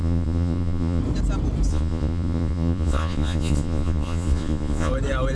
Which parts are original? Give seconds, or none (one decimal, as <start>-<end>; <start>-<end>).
1.0-1.7; 4.9-5.4